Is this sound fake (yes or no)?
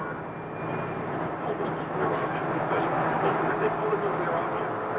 no